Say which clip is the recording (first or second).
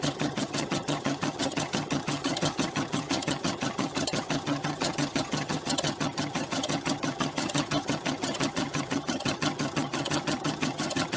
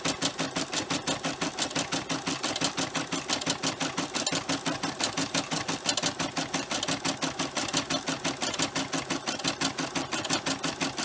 second